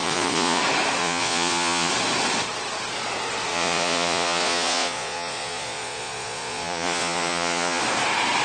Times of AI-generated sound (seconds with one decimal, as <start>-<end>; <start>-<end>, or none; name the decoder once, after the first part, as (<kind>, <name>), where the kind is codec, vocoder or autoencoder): 0.0-0.6 (vocoder, Vocos); 1.0-1.9; 3.5-7.8